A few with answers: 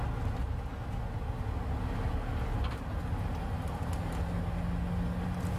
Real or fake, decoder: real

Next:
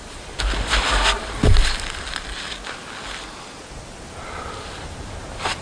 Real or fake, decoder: real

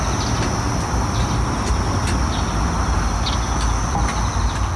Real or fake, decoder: real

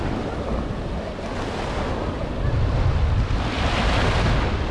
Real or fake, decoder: real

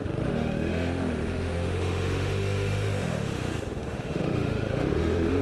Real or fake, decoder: fake, autoencoder, DAC-VAE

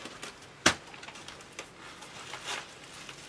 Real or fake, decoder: real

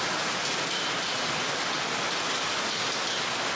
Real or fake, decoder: real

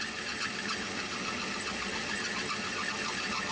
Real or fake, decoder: real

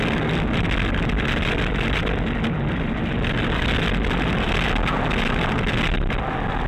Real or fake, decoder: real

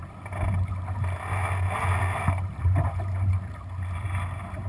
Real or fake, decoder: real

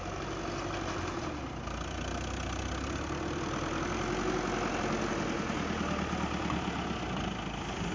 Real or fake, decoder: real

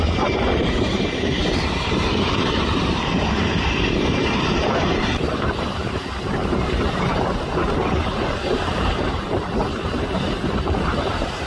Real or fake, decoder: fake, vocoder, BigVGAN v2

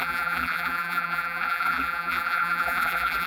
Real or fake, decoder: fake, vocoder, BigVGAN v2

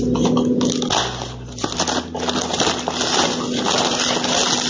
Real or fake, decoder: real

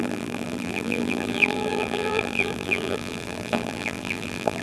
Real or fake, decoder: fake, vocoder, BigVGAN v2